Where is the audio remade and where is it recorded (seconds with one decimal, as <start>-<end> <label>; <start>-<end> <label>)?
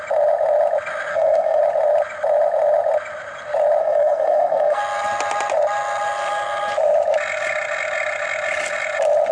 0.0-1.1 recorded; 1.1-1.6 remade; 1.6-3.8 recorded; 3.8-4.8 remade; 4.8-9.3 recorded